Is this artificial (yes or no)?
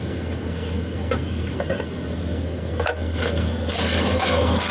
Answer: yes